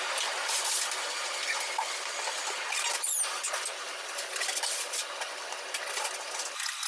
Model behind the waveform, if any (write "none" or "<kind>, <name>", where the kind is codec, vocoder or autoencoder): none